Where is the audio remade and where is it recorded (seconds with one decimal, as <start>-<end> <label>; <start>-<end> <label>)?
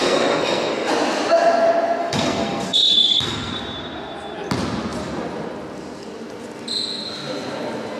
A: 0.0-0.9 remade; 0.9-2.0 recorded; 2.0-3.6 remade; 3.6-8.0 recorded